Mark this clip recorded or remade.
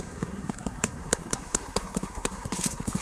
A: remade